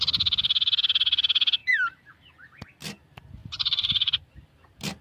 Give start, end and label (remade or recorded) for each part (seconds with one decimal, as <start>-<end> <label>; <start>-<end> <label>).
0.0-1.6 recorded; 1.6-2.3 remade; 2.3-3.4 recorded; 3.4-4.3 remade; 4.3-5.0 recorded